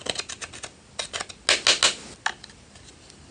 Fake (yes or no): no